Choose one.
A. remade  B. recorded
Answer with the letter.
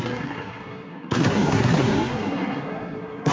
A